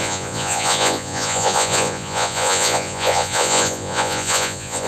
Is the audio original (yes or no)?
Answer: no